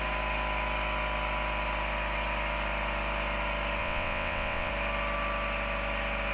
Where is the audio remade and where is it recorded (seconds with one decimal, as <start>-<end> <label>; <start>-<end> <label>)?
0.0-3.8 recorded; 3.8-4.7 remade; 4.7-6.3 recorded